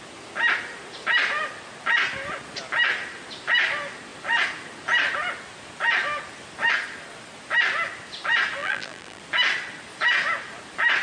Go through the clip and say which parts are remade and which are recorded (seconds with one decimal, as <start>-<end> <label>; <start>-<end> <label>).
0.0-8.6 recorded; 8.6-9.2 remade; 9.2-11.0 recorded